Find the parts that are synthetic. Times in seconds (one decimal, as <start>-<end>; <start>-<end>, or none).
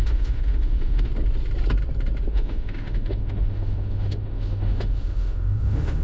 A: 0.0-1.1; 2.3-6.0